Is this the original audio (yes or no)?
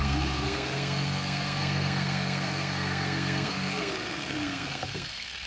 no